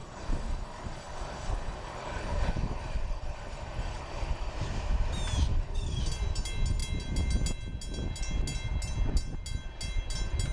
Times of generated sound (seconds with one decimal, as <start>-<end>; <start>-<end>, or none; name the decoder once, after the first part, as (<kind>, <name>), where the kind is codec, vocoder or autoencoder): 0.0-4.5 (codec, DAC); 5.5-6.0

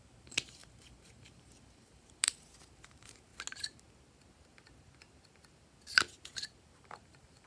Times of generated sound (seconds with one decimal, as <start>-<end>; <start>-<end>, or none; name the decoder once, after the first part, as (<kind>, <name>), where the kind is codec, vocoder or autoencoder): 0.0-3.3 (vocoder, BigVGAN v2); 6.7-7.5

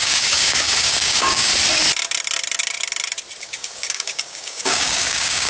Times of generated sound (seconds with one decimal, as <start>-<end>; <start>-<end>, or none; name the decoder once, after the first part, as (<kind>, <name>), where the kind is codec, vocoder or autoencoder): 0.0-1.5 (codec, DAC); 3.4-5.5

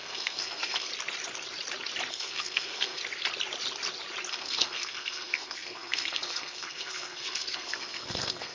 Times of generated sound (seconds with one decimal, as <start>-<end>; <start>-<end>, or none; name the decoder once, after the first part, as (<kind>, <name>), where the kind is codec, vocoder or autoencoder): 0.0-0.9 (codec, SNAC); 2.1-3.0; 4.3-8.5

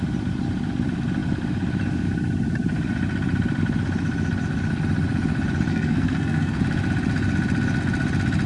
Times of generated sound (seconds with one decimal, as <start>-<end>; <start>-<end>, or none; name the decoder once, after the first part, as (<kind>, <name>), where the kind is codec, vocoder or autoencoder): 5.7-6.6 (codec, SNAC)

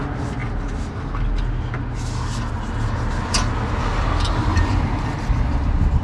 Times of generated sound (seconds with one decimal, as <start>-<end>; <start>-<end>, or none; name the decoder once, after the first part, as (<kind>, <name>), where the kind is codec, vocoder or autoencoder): none